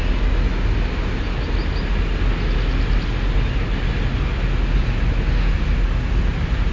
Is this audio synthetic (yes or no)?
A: no